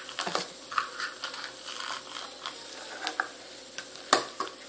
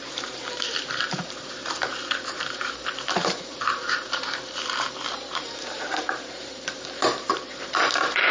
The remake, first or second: second